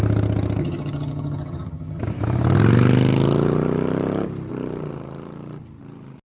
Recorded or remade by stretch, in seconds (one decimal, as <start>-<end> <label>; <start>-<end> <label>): 0.0-0.6 recorded; 0.6-2.0 remade; 2.0-6.4 recorded

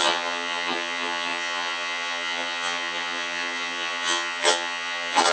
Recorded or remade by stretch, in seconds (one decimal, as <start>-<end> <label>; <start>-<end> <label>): 0.0-5.3 remade